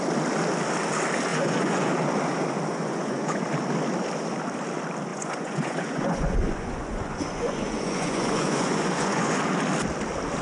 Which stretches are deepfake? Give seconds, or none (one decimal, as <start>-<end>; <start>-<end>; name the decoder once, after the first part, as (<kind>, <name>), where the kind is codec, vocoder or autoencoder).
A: 1.3-1.9 (vocoder, Vocos); 2.7-3.4; 5.1-9.4